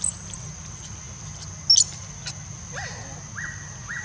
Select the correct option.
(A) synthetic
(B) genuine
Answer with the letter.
B